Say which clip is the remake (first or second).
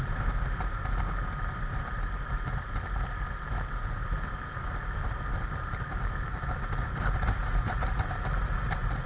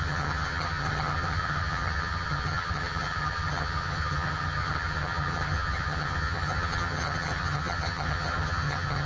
second